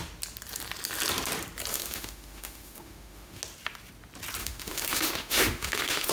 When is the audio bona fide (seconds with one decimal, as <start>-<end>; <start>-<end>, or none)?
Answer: 0.0-1.7; 3.4-4.4